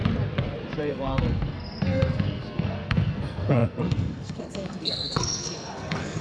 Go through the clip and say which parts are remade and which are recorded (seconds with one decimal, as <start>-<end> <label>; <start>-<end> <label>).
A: 0.0-0.8 recorded; 0.8-6.2 remade